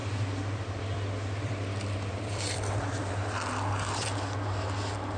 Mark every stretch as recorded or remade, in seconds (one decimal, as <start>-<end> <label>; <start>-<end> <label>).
0.0-3.1 remade; 3.1-5.2 recorded